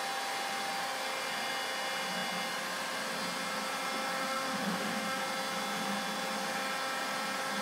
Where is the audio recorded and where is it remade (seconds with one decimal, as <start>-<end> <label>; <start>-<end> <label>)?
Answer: 0.0-4.2 recorded; 4.2-5.2 remade; 5.2-7.6 recorded